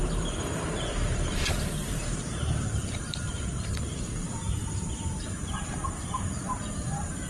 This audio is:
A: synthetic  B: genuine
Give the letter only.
A